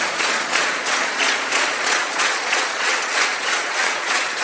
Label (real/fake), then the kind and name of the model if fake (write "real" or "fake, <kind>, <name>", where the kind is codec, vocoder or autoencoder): fake, vocoder, Vocos